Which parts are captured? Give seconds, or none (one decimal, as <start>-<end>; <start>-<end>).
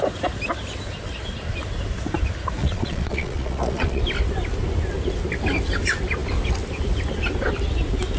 0.0-2.6; 4.0-8.2